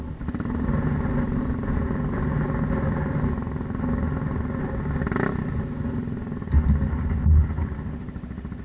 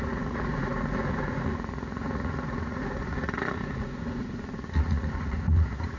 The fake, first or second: second